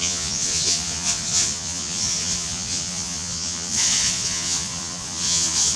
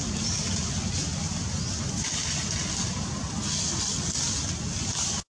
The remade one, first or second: first